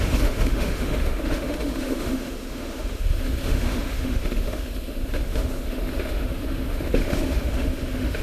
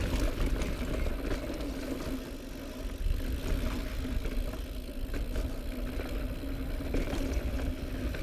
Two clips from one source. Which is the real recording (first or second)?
second